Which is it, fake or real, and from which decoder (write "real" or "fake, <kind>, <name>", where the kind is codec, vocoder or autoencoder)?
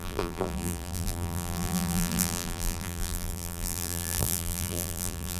fake, vocoder, BigVGAN v2